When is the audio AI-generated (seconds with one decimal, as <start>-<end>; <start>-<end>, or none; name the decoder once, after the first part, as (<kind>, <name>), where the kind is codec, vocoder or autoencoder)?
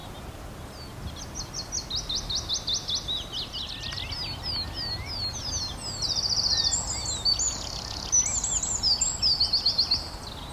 none